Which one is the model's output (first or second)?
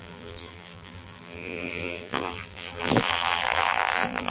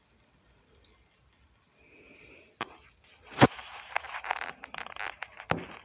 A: first